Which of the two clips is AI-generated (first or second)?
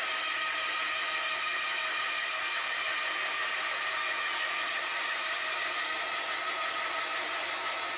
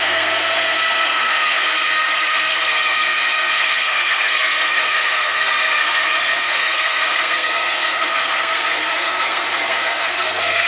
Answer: second